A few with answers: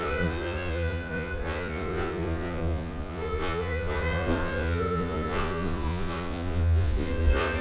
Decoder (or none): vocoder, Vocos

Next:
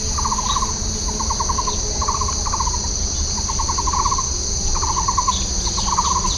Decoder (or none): none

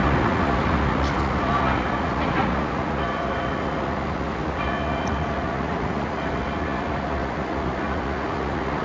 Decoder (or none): vocoder, Vocos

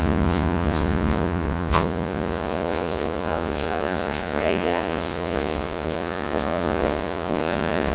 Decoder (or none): vocoder, Vocos